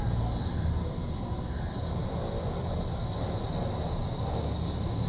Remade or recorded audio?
recorded